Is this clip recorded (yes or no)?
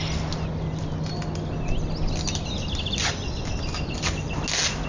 yes